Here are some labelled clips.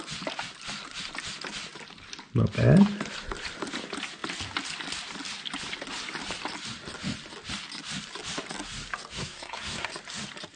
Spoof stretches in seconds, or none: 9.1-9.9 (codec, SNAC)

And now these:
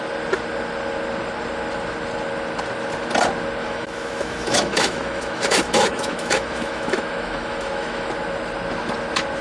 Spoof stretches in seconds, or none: 3.6-8.1 (autoencoder, DAC-VAE)

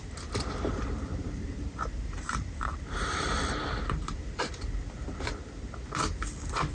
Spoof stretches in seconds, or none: 1.1-4.5 (vocoder, BigVGAN v2)

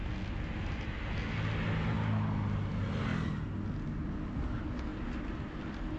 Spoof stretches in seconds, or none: none

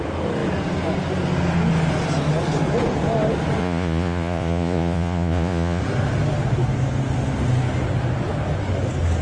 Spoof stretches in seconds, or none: 3.6-5.8 (vocoder, Vocos)

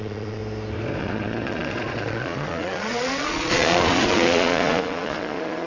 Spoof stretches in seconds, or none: 0.0-0.4 (vocoder, Vocos); 1.0-5.7

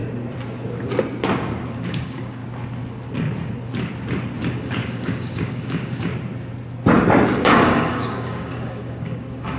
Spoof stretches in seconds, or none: 1.7-2.4 (codec, DAC); 4.5-6.1; 7.3-9.6